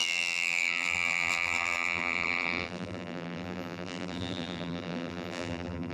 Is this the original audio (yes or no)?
no